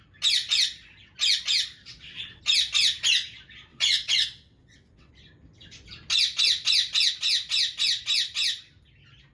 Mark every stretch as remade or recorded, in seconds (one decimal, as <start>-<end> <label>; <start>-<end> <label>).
0.0-1.8 recorded; 1.8-2.4 remade; 2.4-3.7 recorded; 3.7-5.1 remade; 5.1-9.3 recorded